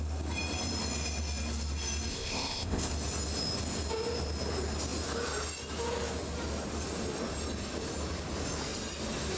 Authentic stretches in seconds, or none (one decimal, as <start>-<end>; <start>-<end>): 0.0-2.1; 2.9-9.4